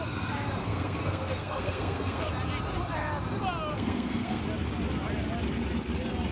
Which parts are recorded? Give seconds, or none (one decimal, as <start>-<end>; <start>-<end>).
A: 0.0-0.6; 2.3-3.7; 4.4-6.3